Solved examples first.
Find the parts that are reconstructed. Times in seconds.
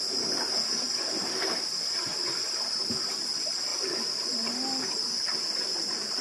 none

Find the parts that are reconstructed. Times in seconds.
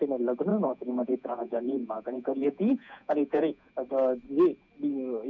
0.5-3.7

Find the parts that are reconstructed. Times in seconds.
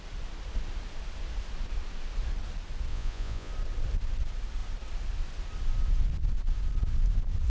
2.9-3.5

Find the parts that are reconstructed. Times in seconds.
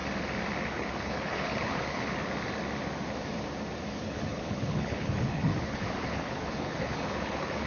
0.6-2.1; 3.9-7.7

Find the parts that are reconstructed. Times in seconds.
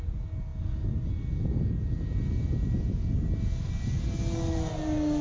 none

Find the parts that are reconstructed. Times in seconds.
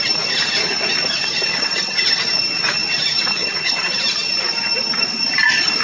1.5-2.2; 3.4-3.9